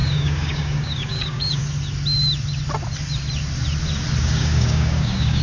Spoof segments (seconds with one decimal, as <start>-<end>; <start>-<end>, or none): 0.0-1.6; 4.2-5.4